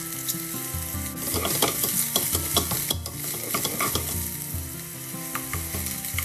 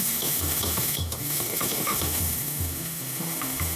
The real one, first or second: first